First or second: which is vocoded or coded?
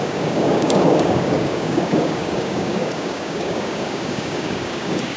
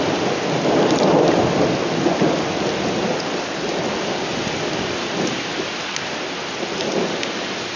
first